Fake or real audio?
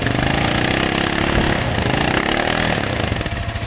real